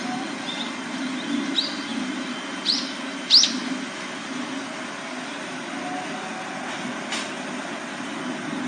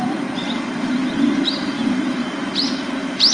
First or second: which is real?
first